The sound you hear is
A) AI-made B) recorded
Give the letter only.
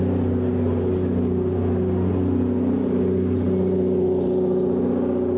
B